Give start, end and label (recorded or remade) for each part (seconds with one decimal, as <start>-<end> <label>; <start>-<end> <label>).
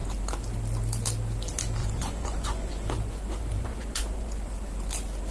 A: 0.0-1.8 recorded; 1.8-4.5 remade; 4.5-5.3 recorded